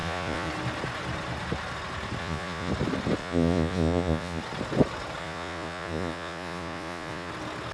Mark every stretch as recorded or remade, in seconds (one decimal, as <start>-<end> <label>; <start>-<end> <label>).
0.0-0.5 remade; 0.5-2.2 recorded; 2.2-2.7 remade; 2.7-3.2 recorded; 3.2-4.4 remade; 4.4-5.2 recorded; 5.2-7.3 remade; 7.3-7.7 recorded